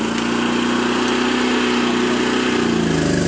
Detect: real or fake real